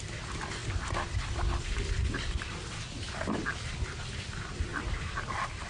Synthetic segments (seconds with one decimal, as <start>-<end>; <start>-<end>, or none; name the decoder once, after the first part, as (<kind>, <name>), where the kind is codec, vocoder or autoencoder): none